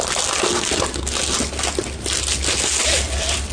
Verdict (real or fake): real